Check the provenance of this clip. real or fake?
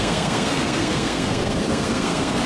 fake